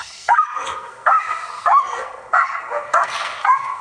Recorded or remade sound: remade